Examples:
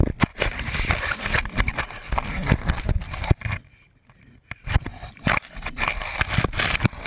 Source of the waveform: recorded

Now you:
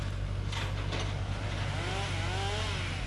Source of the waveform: recorded